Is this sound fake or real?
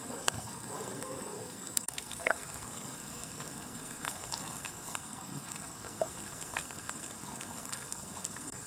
fake